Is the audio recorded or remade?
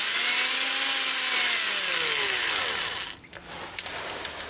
recorded